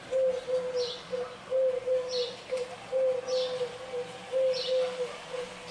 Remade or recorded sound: recorded